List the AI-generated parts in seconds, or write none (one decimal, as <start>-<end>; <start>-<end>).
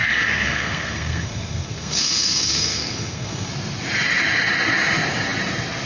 0.0-3.5